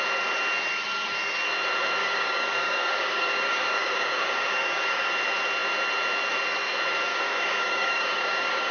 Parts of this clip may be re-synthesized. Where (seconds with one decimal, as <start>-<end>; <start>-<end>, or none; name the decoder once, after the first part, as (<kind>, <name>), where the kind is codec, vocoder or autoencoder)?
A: 2.0-5.1 (codec, DAC); 7.1-8.7